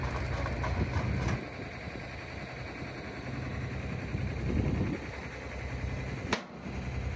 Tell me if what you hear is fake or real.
real